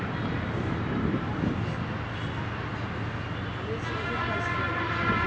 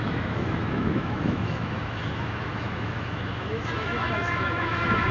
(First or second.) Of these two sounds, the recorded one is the first